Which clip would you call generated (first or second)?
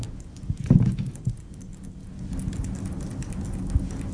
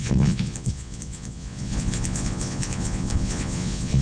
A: second